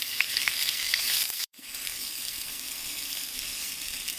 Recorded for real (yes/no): no